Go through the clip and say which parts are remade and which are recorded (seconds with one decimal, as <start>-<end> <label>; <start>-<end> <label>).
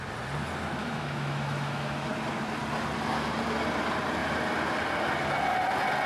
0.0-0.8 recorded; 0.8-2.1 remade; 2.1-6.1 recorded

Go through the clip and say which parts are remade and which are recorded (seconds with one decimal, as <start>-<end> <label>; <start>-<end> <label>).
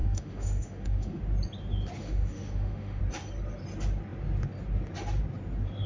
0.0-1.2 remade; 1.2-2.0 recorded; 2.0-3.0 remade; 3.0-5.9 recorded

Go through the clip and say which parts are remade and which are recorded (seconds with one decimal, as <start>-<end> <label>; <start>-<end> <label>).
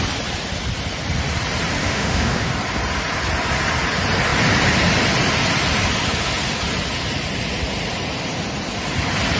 0.0-1.8 recorded; 1.8-2.5 remade; 2.5-9.4 recorded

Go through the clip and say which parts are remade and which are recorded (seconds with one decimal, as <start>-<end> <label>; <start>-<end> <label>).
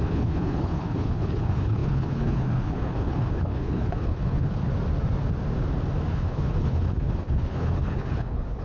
0.0-4.7 remade; 4.7-6.1 recorded; 6.1-8.6 remade